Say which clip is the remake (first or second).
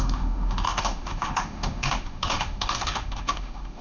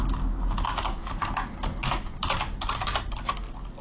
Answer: first